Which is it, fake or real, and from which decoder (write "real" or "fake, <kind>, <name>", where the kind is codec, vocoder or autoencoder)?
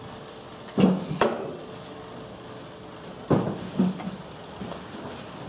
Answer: real